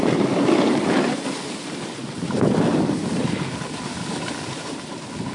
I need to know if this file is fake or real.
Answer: real